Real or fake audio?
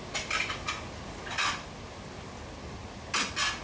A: real